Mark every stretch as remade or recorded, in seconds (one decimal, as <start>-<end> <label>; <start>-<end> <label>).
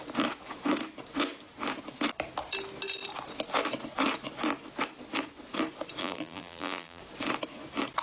0.0-6.0 recorded; 6.0-7.0 remade; 7.0-8.0 recorded